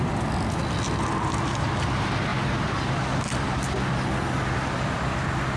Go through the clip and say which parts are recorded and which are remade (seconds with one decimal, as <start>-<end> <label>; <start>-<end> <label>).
0.0-5.6 recorded